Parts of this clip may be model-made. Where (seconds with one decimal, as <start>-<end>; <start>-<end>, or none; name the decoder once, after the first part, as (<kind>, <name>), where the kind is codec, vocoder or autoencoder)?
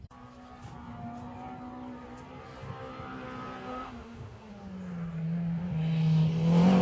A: 3.7-4.5 (autoencoder, DAC-VAE)